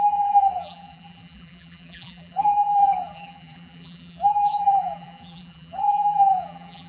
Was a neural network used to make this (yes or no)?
yes